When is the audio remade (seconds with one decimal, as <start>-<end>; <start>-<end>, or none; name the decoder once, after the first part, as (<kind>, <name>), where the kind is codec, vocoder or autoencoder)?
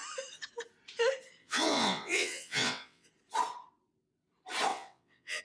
1.4-3.1 (vocoder, WaveNeXt); 4.7-5.4